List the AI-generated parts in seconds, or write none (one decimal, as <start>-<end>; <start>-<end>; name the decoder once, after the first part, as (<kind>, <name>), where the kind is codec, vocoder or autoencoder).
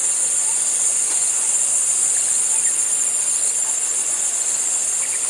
0.0-1.5 (vocoder, Vocos); 4.0-4.5